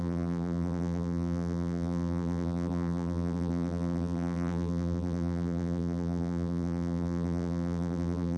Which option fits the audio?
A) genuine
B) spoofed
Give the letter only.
B